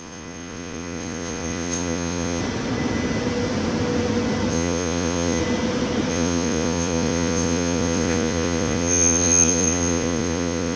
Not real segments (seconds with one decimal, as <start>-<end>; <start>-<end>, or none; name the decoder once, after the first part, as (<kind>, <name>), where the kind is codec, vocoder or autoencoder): 0.0-2.4 (vocoder, Vocos); 4.5-5.4; 6.1-10.8